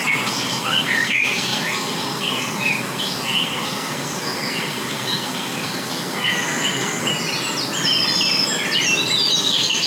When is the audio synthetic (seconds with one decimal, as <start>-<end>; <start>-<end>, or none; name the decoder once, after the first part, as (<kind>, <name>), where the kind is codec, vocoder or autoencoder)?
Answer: 0.0-7.1 (codec, SNAC); 9.4-9.9